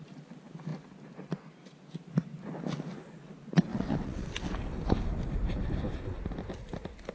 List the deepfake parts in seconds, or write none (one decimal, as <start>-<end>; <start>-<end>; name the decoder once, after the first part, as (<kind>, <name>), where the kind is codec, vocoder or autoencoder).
3.7-4.3 (vocoder, WaveNeXt)